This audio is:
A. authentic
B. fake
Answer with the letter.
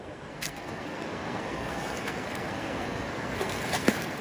B